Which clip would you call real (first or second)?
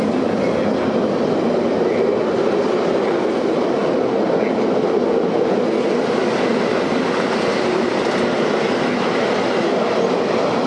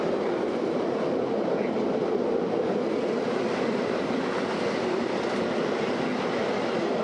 first